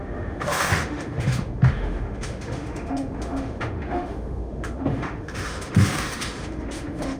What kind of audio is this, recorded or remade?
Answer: remade